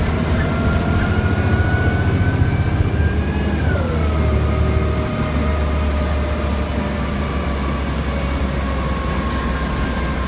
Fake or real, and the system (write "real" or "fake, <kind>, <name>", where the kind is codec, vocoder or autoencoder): real